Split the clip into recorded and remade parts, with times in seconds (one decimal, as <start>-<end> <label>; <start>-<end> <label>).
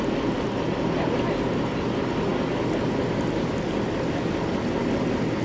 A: 0.0-5.4 recorded